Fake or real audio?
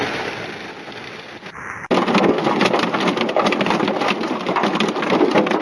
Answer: real